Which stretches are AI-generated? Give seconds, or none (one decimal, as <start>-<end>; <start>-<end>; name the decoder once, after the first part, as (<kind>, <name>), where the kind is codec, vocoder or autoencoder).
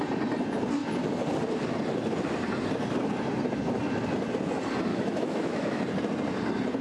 4.9-5.8 (autoencoder, DAC-VAE)